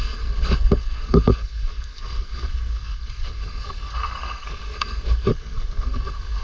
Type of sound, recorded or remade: remade